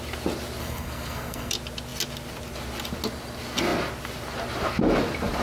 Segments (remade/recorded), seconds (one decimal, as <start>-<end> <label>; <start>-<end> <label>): 0.0-0.6 recorded; 0.6-1.5 remade; 1.5-5.4 recorded